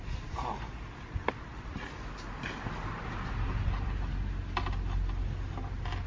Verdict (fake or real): real